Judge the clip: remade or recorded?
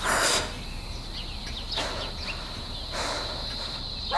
recorded